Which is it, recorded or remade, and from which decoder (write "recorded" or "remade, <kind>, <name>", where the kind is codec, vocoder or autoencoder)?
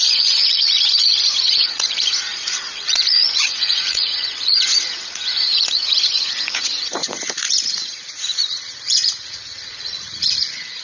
remade, vocoder, Vocos